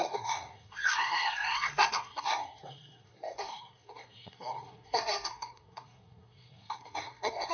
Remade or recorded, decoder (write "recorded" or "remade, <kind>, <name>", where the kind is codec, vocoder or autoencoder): remade, codec, SNAC